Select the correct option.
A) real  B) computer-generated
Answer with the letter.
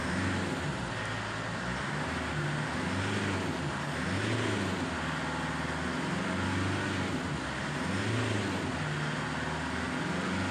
A